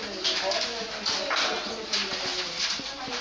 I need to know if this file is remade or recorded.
recorded